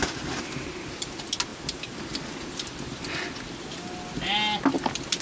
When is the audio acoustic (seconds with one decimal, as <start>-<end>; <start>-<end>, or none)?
0.0-5.2